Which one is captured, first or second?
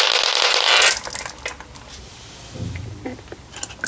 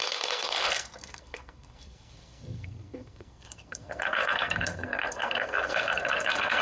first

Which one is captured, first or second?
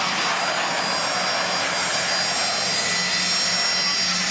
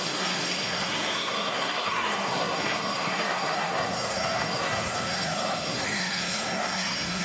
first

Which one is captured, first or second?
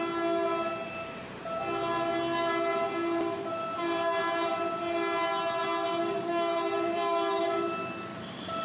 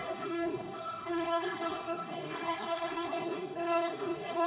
first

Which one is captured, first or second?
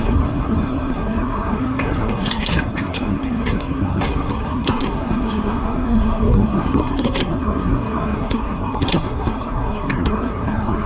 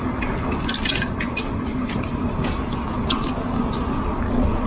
second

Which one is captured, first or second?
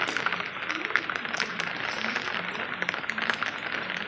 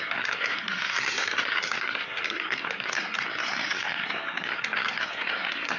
first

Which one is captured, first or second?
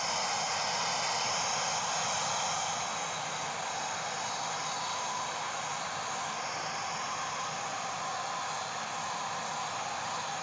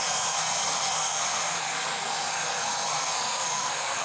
first